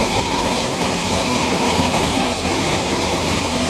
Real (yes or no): no